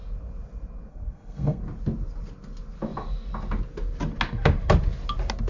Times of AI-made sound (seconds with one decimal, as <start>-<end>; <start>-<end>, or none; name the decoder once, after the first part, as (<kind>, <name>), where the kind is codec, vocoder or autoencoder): 0.9-1.6 (codec, SNAC)